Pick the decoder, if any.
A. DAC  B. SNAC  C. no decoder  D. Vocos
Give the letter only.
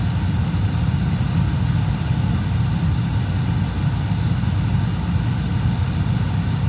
C